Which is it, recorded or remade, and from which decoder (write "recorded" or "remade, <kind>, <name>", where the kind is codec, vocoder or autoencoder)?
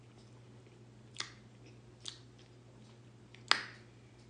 recorded